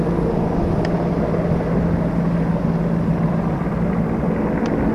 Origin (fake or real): real